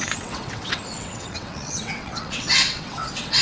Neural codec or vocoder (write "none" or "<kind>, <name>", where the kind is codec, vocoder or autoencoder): vocoder, WaveNeXt